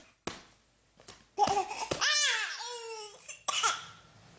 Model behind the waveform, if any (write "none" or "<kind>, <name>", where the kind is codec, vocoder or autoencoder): none